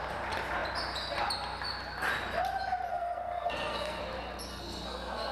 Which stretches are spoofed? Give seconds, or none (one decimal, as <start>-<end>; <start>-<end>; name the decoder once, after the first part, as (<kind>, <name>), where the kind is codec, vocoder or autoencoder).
2.9-4.0 (codec, SNAC); 4.5-5.3